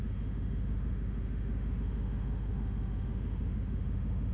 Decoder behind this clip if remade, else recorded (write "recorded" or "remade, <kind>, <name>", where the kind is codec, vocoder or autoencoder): remade, autoencoder, DAC-VAE